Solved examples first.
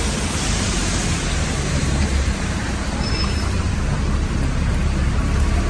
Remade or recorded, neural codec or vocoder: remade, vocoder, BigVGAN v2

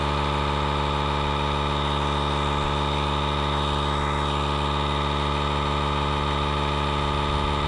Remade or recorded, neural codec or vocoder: recorded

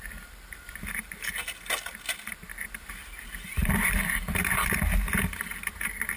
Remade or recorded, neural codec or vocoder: recorded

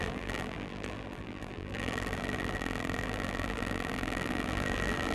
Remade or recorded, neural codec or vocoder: remade, vocoder, BigVGAN v2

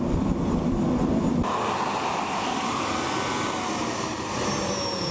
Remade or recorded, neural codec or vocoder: recorded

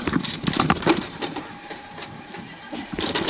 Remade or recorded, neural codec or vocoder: remade, vocoder, BigVGAN v2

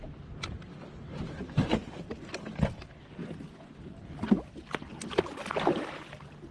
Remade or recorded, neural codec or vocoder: recorded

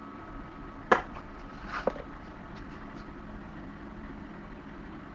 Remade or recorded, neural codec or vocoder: remade, vocoder, BigVGAN v2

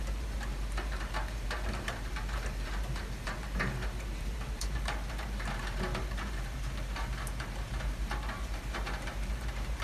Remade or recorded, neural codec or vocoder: remade, vocoder, BigVGAN v2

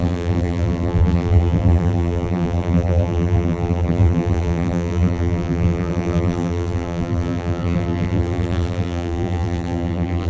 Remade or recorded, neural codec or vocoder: remade, vocoder, BigVGAN v2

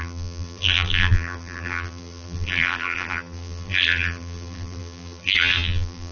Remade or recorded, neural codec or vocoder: remade, vocoder, BigVGAN v2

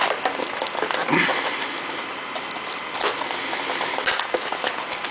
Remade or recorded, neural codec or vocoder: recorded